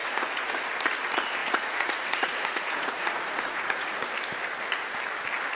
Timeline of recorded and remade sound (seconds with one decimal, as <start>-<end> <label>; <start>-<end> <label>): 0.0-0.7 remade; 0.7-1.4 recorded; 1.4-4.1 remade; 4.1-5.5 recorded